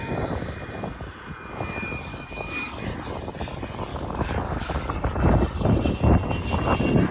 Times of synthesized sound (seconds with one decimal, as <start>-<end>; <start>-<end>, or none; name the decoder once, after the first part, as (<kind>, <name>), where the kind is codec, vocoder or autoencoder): 2.1-2.8 (codec, DAC); 3.9-4.9